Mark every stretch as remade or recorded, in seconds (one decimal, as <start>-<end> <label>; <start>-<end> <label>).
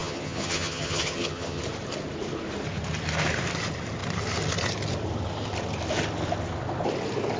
0.0-1.6 remade; 1.6-7.4 recorded